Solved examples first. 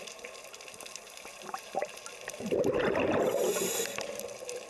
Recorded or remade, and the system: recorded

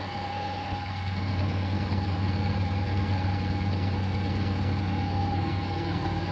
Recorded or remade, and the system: remade, codec, SNAC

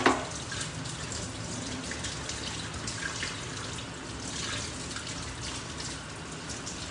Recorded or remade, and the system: recorded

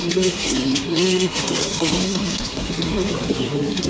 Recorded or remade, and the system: remade, codec, SNAC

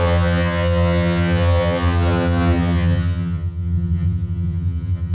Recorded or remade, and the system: remade, vocoder, HiFi-GAN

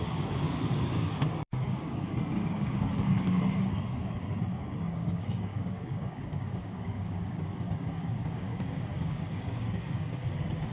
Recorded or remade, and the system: remade, codec, DAC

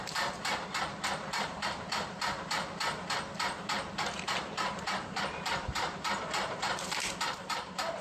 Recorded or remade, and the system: remade, vocoder, BigVGAN v2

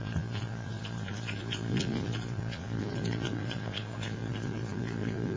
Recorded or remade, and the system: remade, vocoder, Vocos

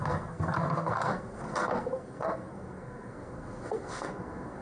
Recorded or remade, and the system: remade, codec, SNAC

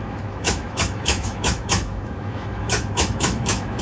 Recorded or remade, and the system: remade, autoencoder, DAC-VAE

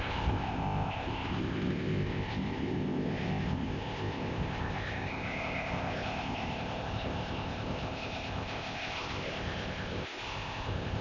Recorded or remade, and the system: remade, codec, ZipCodec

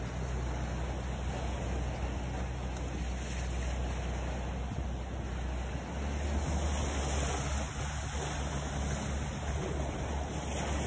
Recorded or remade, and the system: recorded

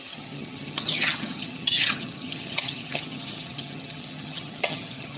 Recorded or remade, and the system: remade, vocoder, HiFi-GAN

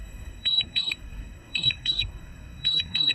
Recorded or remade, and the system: remade, codec, SNAC